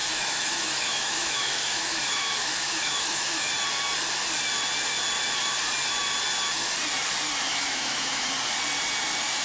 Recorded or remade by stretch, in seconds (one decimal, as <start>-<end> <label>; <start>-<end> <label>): 0.0-3.5 remade; 3.5-7.5 recorded; 7.5-8.3 remade; 8.3-9.4 recorded